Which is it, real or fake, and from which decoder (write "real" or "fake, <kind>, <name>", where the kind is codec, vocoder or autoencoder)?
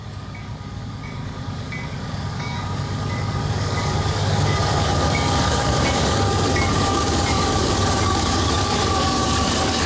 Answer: fake, codec, DAC